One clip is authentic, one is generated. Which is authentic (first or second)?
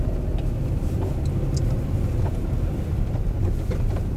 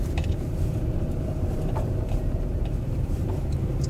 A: first